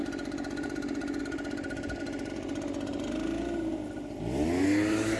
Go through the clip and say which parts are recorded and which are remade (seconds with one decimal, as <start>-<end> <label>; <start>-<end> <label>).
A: 0.0-5.2 recorded